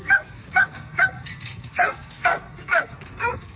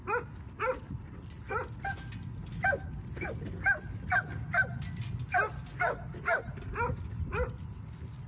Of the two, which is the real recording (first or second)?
second